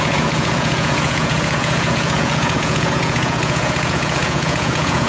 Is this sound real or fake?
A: fake